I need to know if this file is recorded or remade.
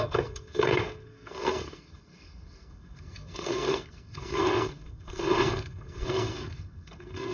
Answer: remade